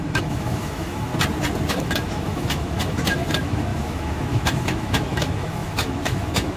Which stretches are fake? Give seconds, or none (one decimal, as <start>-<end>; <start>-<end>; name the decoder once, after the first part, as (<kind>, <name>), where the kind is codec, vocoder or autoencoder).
0.0-1.1 (autoencoder, DAC-VAE); 1.7-6.6